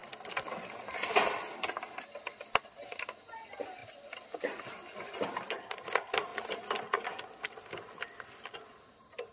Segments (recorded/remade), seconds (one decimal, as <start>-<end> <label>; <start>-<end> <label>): 0.0-9.3 recorded